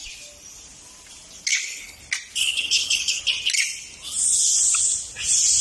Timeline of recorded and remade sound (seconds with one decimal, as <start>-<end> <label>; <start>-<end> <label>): 0.0-1.5 recorded; 1.5-2.0 remade; 2.0-2.4 recorded; 2.4-3.2 remade; 3.2-5.6 recorded